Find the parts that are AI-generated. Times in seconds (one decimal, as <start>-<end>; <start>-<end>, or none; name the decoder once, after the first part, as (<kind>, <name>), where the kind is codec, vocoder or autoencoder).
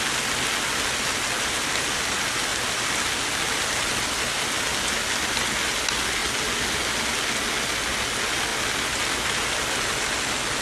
none